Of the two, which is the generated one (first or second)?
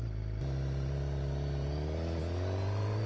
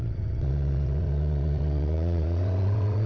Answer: second